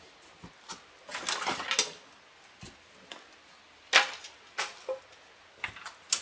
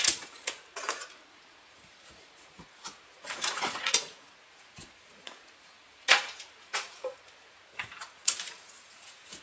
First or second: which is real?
first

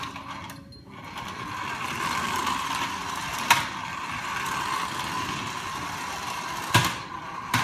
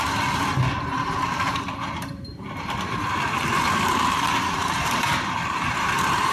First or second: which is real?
first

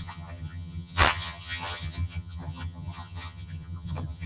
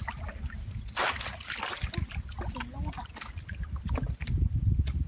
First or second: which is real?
second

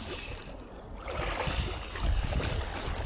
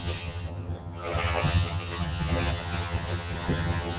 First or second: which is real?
first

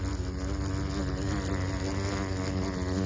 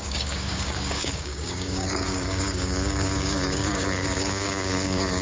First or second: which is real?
first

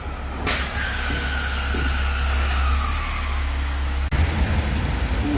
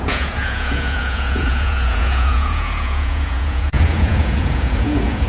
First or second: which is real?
first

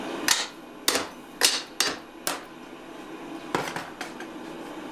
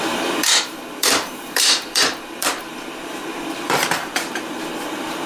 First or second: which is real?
first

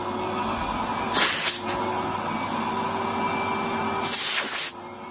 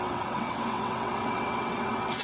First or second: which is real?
first